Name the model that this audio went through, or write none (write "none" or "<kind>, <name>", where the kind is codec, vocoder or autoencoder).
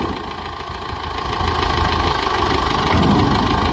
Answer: none